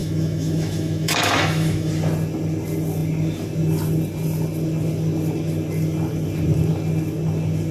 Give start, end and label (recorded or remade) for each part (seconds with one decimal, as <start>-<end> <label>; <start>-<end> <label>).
0.0-1.9 remade; 1.9-7.7 recorded